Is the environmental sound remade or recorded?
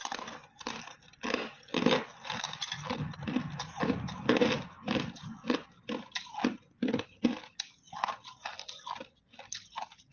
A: recorded